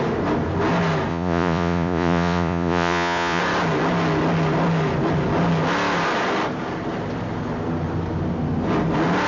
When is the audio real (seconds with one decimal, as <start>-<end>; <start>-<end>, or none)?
0.0-1.1; 3.4-9.3

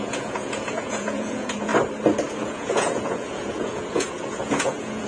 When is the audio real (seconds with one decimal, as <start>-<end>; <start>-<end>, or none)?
1.7-2.3